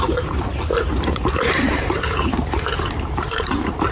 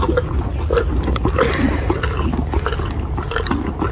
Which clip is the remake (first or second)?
first